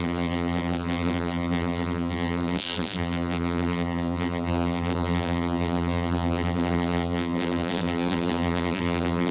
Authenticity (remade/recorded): remade